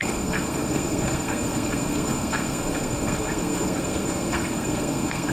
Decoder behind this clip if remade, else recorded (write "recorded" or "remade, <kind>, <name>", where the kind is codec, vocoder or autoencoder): remade, codec, SNAC